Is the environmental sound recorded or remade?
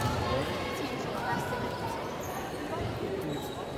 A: remade